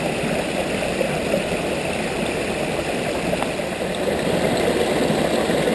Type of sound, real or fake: real